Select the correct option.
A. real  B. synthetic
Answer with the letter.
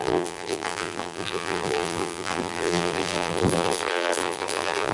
B